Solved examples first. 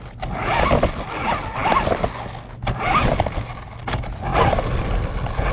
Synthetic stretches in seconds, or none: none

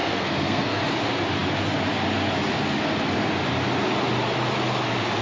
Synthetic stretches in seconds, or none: 0.0-0.8 (codec, SNAC)

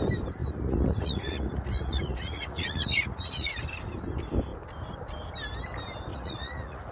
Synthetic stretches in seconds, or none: 0.4-3.5 (vocoder, Vocos); 6.1-6.9

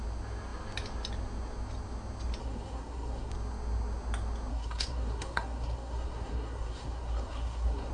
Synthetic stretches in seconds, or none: 2.4-3.3 (codec, SNAC); 4.5-7.9

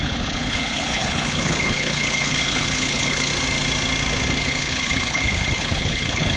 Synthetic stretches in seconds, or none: 0.0-3.3 (codec, HILCodec); 4.4-6.4